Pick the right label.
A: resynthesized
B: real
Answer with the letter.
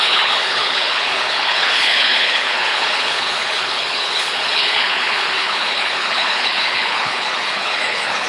A